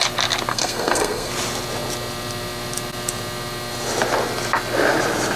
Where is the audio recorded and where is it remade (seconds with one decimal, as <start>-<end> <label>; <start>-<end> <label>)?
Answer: 0.0-0.5 recorded; 0.5-1.3 remade; 1.3-5.4 recorded